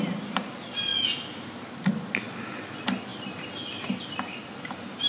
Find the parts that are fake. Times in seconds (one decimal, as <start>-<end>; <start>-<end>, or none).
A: none